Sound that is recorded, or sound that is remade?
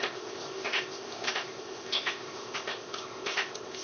remade